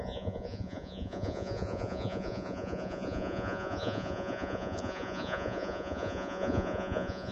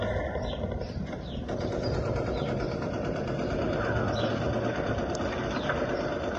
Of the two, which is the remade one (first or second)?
first